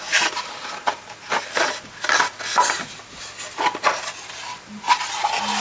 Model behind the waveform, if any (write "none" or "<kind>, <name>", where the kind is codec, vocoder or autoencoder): none